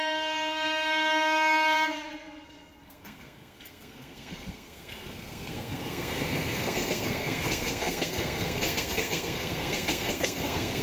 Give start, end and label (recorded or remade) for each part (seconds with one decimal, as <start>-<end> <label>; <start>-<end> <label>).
0.0-10.8 remade